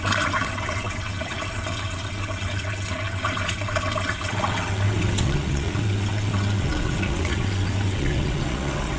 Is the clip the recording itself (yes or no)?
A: no